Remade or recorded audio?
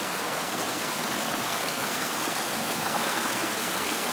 remade